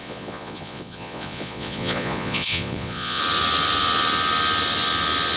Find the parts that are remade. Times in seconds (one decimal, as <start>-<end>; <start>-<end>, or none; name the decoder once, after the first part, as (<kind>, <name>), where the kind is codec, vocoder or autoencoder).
0.0-3.2 (vocoder, Vocos)